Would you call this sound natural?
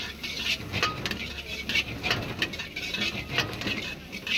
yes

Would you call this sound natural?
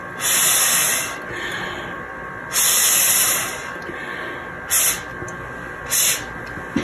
yes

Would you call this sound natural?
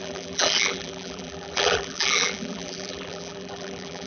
no